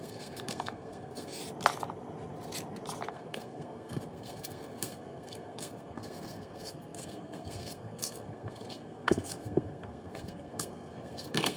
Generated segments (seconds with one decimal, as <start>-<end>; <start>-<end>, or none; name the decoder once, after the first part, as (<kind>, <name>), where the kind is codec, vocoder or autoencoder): 0.0-1.4 (codec, SNAC); 3.1-11.6